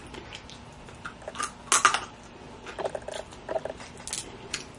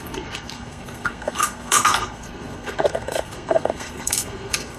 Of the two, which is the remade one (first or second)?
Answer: second